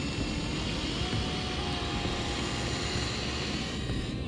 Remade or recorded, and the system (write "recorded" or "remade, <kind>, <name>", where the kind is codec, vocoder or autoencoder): recorded